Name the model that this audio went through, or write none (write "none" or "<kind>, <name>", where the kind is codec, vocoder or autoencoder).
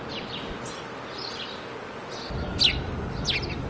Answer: none